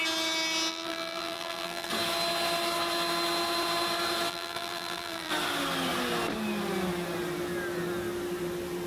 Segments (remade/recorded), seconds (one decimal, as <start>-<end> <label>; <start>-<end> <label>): 0.0-0.7 recorded; 0.7-1.9 remade; 1.9-4.3 recorded; 4.3-5.3 remade; 5.3-8.9 recorded